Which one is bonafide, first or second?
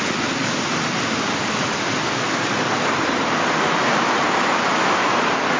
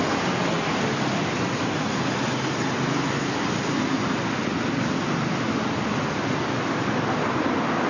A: second